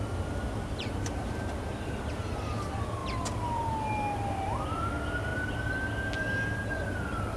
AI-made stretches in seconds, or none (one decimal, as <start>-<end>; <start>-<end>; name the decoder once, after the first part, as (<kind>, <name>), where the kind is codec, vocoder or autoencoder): 3.0-3.7 (vocoder, BigVGAN v2)

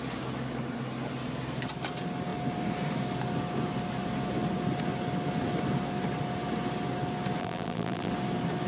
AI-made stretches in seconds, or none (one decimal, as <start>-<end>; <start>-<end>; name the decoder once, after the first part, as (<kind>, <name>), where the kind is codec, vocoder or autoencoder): 7.4-8.1 (vocoder, BigVGAN v2)